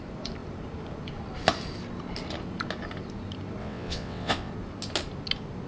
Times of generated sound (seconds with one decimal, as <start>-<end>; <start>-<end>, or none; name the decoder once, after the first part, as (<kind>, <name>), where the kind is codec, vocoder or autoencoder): 3.6-4.5 (vocoder, WaveNeXt)